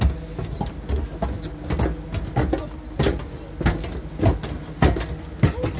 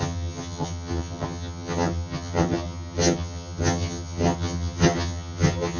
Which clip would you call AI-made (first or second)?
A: second